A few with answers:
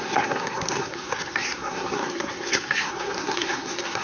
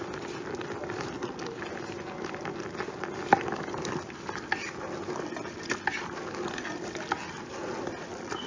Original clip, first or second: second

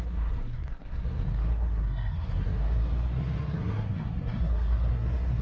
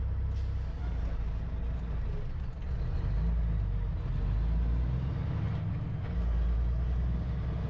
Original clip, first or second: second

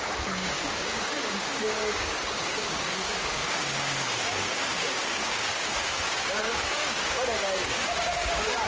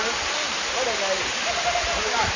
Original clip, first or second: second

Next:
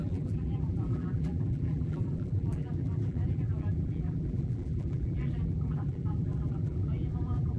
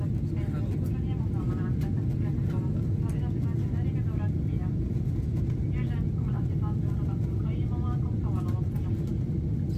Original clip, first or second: second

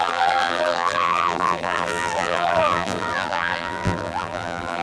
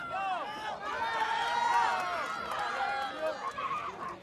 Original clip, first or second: second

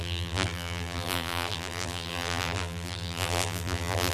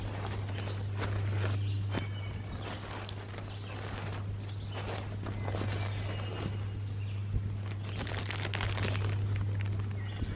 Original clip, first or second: second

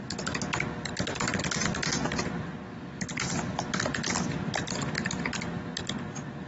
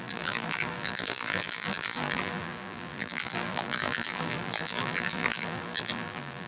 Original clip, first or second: first